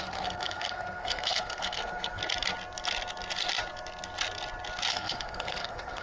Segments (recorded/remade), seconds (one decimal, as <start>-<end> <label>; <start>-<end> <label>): 0.0-2.2 remade; 2.2-4.9 recorded; 4.9-6.0 remade